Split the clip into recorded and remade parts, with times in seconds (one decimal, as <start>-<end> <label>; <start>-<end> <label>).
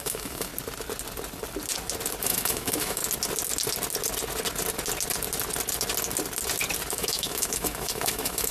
0.0-0.5 remade; 0.5-2.2 recorded; 2.2-3.0 remade; 3.0-6.9 recorded; 6.9-8.5 remade